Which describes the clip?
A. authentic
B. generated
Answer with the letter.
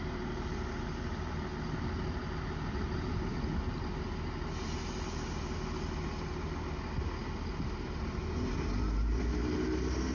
A